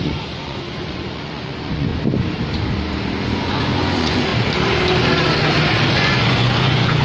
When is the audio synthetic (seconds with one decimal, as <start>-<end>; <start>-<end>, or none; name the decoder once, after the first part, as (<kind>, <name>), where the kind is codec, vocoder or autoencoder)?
0.0-1.9 (vocoder, Vocos); 3.2-4.3; 5.9-7.0